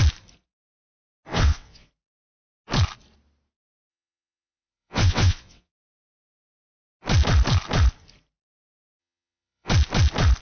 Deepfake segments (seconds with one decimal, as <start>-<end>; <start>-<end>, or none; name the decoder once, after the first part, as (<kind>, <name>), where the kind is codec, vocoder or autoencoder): 1.3-1.9 (vocoder, WaveNeXt); 3.9-5.7; 9.0-9.7